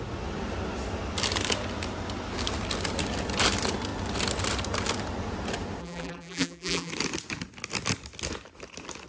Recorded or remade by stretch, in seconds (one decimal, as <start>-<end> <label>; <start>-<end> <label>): 0.0-5.8 recorded; 5.8-6.9 remade; 6.9-9.1 recorded